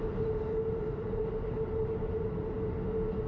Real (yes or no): yes